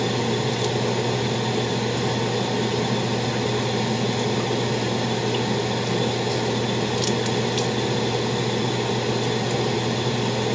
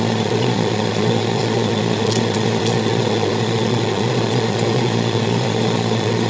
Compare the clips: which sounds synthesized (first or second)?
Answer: second